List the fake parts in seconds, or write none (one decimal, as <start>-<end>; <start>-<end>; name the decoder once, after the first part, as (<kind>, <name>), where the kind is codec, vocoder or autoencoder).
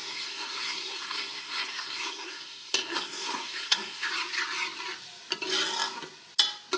0.0-4.1 (codec, SNAC)